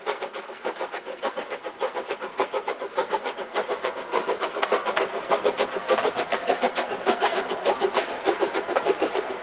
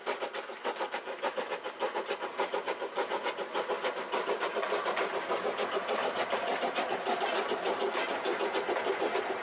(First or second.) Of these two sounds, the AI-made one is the first